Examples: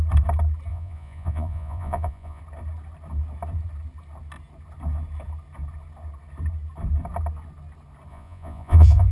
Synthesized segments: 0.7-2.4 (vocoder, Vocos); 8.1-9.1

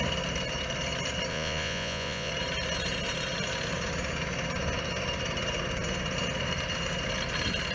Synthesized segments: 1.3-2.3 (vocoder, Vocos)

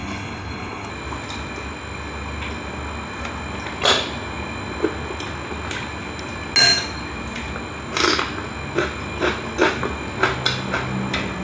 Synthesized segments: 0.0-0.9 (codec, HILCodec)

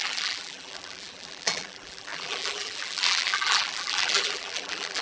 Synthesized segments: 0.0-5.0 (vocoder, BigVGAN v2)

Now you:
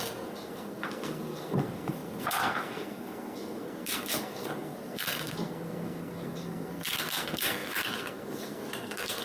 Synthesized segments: 0.0-9.2 (codec, SNAC)